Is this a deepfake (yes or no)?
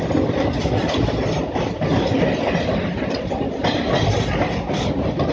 no